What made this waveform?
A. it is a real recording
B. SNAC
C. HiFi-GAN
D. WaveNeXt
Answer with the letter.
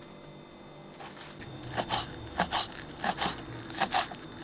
A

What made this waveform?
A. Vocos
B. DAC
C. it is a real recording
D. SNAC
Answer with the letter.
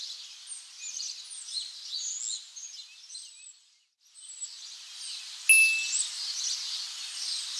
C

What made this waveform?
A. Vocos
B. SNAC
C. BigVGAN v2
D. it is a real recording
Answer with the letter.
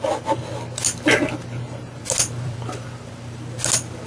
C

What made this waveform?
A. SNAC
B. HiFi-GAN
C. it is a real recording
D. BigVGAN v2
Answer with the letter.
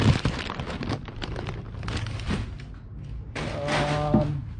C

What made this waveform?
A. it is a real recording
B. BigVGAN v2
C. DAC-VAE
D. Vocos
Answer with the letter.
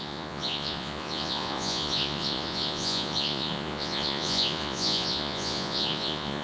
D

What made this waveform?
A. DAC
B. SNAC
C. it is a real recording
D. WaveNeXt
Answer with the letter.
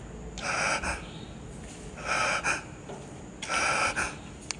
C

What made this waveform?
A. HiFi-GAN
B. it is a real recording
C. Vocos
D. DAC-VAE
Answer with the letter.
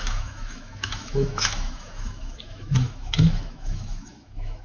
D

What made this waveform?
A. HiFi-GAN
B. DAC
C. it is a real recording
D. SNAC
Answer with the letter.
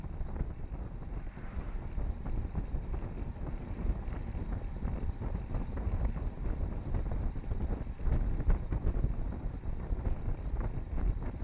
C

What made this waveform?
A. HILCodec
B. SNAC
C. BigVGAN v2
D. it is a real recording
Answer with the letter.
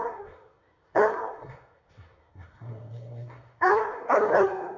B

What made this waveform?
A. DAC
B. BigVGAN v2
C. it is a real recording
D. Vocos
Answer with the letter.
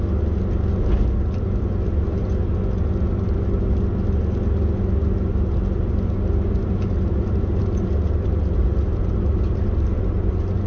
C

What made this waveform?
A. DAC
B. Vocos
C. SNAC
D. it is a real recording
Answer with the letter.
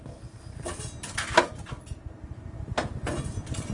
D